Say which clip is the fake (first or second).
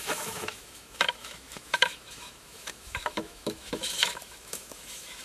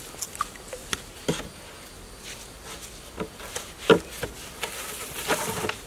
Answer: first